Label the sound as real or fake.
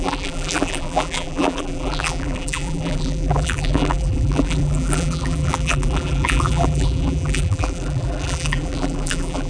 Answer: fake